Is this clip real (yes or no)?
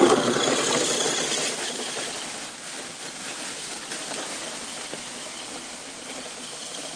yes